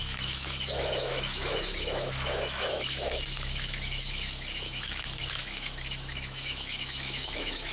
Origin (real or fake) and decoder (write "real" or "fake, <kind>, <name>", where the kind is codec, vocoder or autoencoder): fake, autoencoder, DAC-VAE